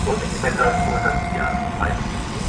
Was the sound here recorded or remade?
remade